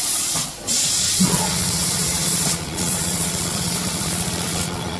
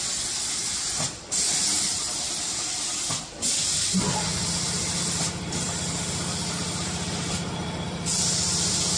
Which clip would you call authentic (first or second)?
second